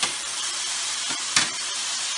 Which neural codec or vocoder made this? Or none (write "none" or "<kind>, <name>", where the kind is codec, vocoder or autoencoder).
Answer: none